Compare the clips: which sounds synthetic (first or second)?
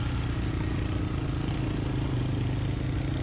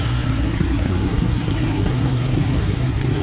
second